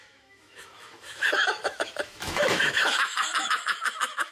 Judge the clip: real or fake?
fake